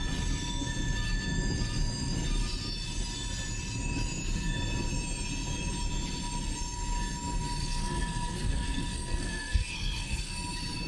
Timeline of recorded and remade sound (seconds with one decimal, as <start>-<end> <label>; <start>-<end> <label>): 0.0-7.6 recorded; 7.6-10.3 remade; 10.3-10.9 recorded